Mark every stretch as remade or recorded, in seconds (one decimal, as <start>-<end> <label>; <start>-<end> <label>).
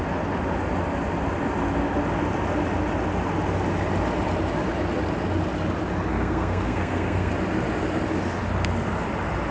0.0-6.1 recorded; 6.1-7.3 remade; 7.3-9.5 recorded